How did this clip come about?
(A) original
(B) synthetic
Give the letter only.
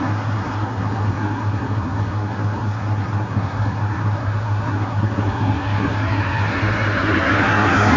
B